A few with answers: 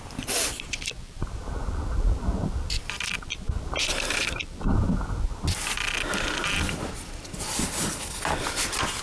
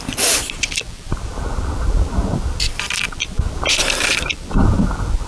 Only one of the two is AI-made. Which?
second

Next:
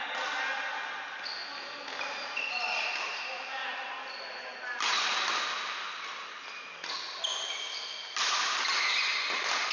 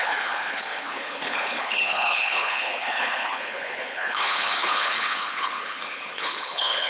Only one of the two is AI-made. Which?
second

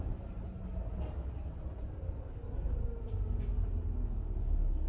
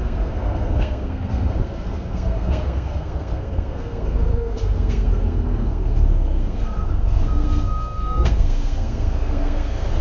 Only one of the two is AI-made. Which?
second